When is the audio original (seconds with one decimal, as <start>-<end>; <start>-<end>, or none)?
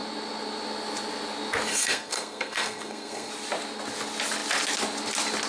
0.0-1.7; 3.3-5.5